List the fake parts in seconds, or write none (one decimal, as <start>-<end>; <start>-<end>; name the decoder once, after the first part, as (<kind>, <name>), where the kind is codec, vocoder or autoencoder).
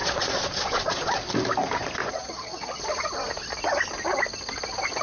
0.0-1.2 (vocoder, Vocos); 2.0-2.8